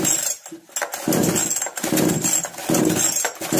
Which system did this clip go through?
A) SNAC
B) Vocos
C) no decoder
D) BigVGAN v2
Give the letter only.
C